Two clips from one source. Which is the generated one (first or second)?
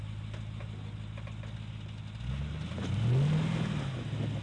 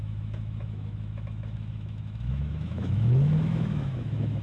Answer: second